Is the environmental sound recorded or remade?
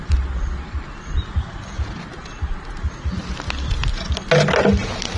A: recorded